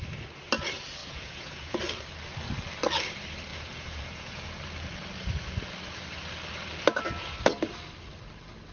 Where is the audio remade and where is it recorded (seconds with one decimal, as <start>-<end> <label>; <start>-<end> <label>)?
0.0-1.0 recorded; 1.0-1.8 remade; 1.8-3.5 recorded; 3.5-4.6 remade; 4.6-8.7 recorded